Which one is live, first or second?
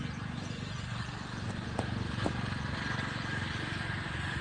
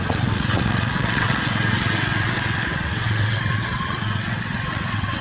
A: first